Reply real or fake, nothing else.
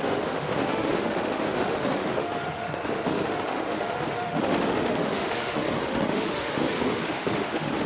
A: fake